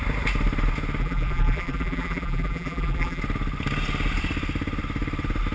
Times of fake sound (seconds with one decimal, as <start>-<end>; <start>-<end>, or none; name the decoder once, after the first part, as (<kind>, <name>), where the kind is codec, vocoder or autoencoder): 1.0-3.2 (vocoder, BigVGAN v2)